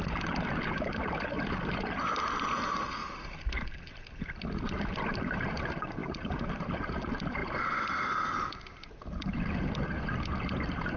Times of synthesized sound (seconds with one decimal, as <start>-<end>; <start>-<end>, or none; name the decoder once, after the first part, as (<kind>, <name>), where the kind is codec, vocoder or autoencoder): 0.0-3.0 (vocoder, BigVGAN v2); 3.6-6.0; 7.0-7.4; 8.5-11.0